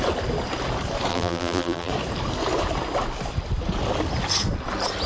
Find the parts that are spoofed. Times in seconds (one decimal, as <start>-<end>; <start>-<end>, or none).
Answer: 1.1-1.9